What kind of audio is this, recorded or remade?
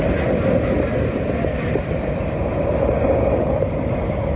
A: recorded